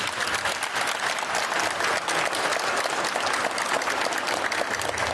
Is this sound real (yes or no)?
yes